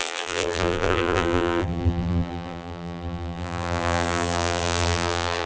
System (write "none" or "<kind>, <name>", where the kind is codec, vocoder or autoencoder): vocoder, BigVGAN v2